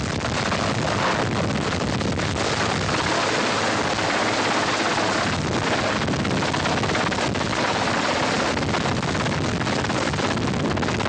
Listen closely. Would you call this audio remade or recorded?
recorded